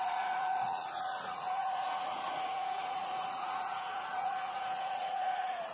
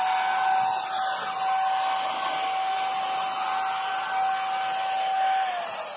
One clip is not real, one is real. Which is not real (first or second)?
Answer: first